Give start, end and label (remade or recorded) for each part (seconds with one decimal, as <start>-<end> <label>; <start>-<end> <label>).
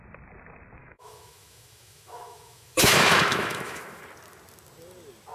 0.0-0.8 recorded; 0.8-4.0 remade; 4.0-5.3 recorded